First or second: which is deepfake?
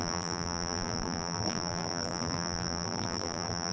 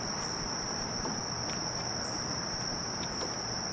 first